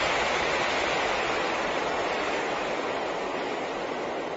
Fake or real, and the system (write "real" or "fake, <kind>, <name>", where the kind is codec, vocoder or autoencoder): real